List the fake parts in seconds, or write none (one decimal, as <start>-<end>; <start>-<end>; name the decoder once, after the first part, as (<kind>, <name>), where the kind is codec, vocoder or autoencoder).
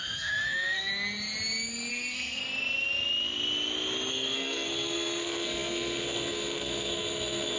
0.0-0.9 (codec, SNAC); 1.9-2.4; 4.1-7.6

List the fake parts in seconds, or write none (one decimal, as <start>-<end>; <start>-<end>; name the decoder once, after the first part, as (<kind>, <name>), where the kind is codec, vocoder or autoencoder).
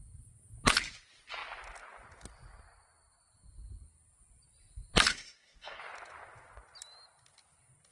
5.1-5.8 (codec, SNAC)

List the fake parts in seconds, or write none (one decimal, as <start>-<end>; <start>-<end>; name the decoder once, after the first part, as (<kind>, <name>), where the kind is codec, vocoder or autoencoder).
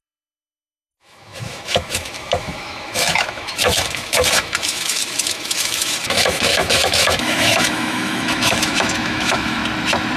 0.0-9.6 (autoencoder, DAC-VAE)